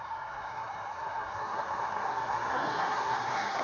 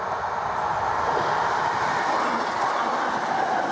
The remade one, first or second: first